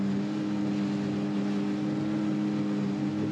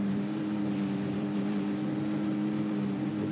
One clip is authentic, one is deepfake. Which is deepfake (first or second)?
second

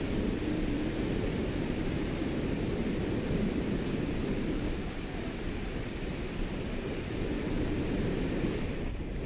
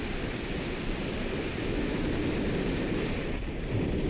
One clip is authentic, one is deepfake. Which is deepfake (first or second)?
first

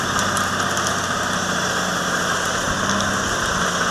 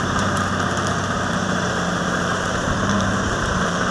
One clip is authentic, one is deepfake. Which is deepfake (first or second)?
second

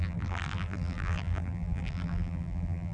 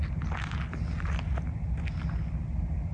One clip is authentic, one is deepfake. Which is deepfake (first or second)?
first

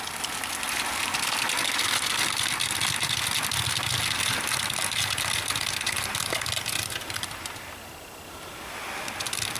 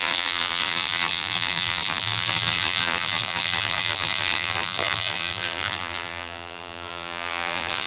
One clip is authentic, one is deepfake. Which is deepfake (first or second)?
second